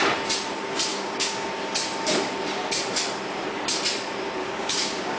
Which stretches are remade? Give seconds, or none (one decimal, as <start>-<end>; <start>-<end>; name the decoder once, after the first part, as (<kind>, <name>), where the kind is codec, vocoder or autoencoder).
0.9-1.5 (codec, DAC); 4.4-5.2